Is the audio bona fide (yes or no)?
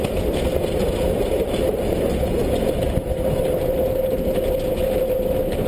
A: yes